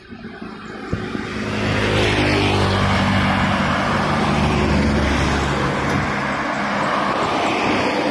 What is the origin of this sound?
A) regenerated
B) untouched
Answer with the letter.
B